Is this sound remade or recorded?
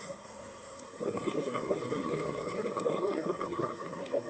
remade